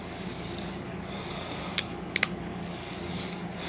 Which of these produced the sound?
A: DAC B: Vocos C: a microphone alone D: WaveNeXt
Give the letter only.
A